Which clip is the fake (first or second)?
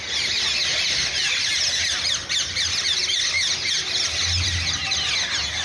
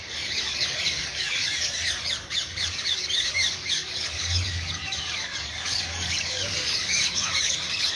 second